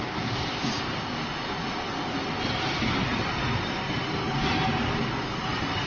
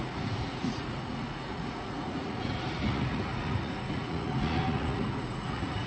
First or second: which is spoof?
second